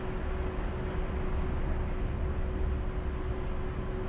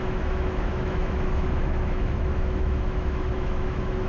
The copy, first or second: second